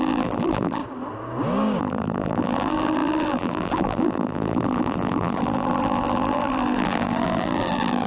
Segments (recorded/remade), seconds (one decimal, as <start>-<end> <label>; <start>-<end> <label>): 0.0-0.8 remade; 0.8-1.8 recorded; 1.8-8.1 remade